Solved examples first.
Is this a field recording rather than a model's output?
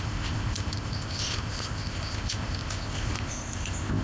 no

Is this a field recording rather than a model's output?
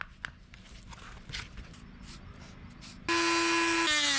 yes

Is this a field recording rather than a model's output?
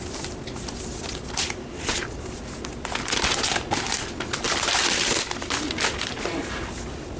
yes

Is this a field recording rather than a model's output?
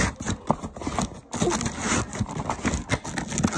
yes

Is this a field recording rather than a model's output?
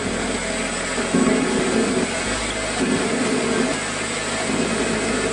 yes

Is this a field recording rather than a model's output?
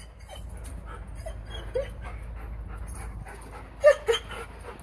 yes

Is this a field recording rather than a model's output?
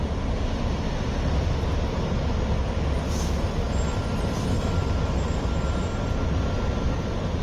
yes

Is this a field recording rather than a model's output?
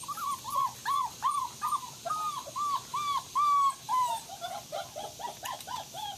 yes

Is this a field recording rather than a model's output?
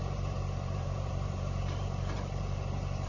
no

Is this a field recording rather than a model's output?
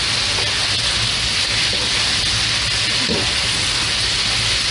yes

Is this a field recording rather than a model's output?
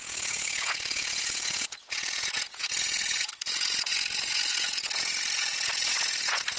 no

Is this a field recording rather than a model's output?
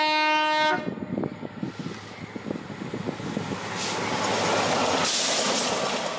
yes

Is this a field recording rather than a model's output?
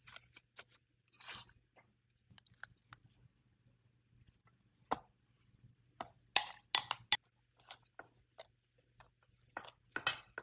yes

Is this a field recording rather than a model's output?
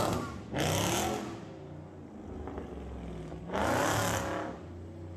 yes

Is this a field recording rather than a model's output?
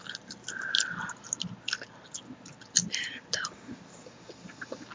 yes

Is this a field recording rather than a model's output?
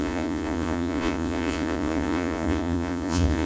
no